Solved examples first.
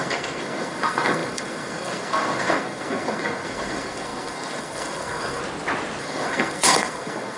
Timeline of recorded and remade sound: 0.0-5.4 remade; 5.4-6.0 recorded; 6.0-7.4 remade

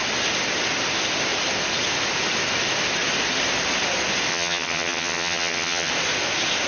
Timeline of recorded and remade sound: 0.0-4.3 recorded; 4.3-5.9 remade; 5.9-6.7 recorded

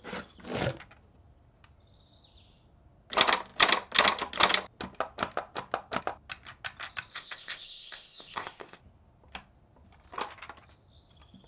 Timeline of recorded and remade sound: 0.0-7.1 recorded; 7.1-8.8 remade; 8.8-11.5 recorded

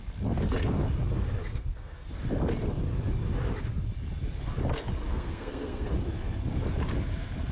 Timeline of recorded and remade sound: 0.0-1.5 recorded; 1.5-2.1 remade; 2.1-5.1 recorded; 5.1-5.9 remade; 5.9-7.5 recorded

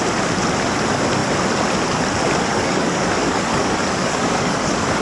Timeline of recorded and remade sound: 0.0-2.5 recorded; 2.5-5.0 remade